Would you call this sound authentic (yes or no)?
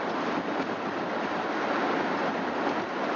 yes